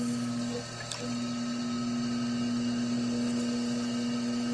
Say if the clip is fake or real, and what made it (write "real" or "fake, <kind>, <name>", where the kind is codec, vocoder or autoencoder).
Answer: real